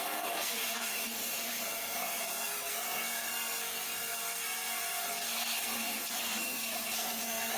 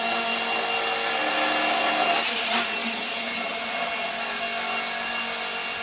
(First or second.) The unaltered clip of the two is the second